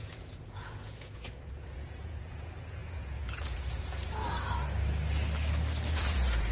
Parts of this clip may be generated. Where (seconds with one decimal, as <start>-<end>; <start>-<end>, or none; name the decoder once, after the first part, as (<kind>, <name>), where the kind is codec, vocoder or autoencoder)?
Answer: 0.0-4.2 (vocoder, Vocos); 5.9-6.5